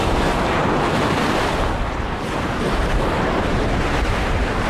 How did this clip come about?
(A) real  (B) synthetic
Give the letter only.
B